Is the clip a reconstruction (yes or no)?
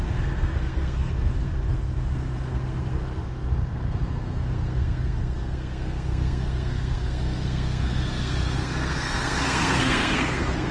yes